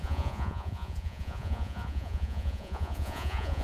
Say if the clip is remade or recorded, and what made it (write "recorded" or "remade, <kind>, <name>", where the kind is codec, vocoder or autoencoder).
remade, vocoder, Vocos